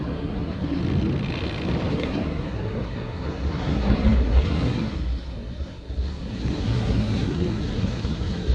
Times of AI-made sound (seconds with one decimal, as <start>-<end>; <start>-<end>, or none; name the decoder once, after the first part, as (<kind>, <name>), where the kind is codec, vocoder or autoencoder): 0.0-0.8 (codec, SNAC); 1.9-8.5